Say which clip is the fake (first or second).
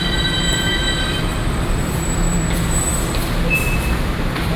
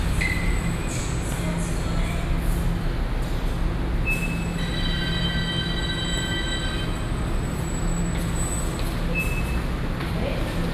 first